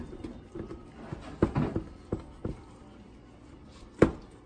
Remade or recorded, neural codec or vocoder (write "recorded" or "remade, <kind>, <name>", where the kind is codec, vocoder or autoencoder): recorded